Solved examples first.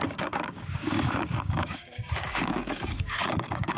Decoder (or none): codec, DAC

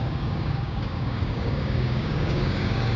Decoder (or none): codec, DAC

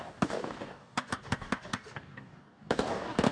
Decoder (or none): codec, DAC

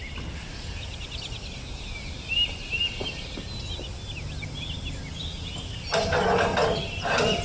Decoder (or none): none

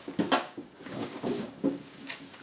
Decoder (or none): codec, DAC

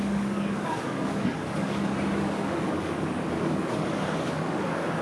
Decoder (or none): codec, DAC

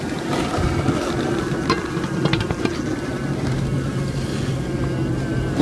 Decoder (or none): none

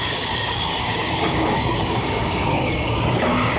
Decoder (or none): codec, DAC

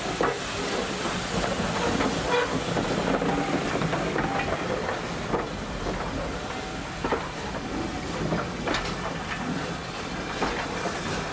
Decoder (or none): none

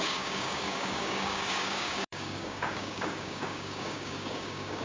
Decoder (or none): codec, DAC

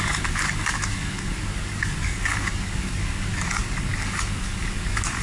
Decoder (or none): codec, DAC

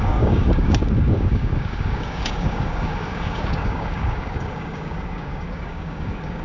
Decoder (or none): codec, DAC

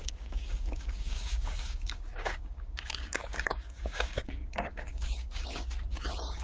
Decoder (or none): codec, DAC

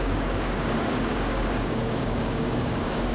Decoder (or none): codec, DAC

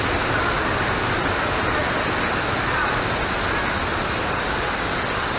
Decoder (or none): none